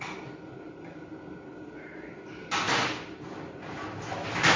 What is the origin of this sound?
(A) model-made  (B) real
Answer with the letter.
B